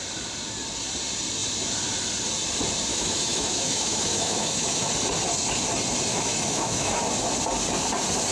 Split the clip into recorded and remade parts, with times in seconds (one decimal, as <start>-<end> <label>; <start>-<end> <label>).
0.0-2.9 recorded; 2.9-4.9 remade; 4.9-6.1 recorded; 6.1-7.0 remade; 7.0-8.3 recorded